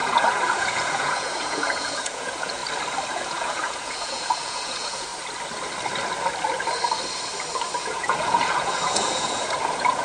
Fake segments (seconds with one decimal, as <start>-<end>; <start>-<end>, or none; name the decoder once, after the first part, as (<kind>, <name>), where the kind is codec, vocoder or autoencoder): 0.0-2.6 (vocoder, Vocos); 3.1-5.1; 7.8-10.0